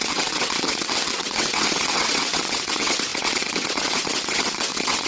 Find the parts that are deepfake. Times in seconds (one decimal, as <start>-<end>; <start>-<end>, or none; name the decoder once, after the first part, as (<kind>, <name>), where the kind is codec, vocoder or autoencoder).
0.0-5.1 (vocoder, WaveNeXt)